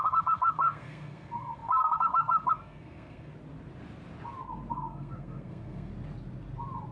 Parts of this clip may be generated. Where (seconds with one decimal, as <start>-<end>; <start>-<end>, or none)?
0.0-3.3; 4.7-5.9